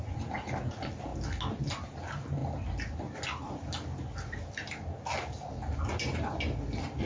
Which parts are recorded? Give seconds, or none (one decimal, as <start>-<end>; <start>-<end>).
0.0-7.1